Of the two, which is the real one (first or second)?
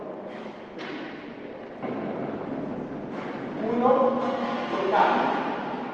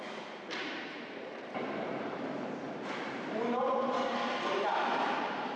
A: first